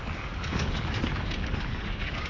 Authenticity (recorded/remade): remade